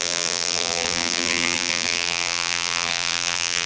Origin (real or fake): fake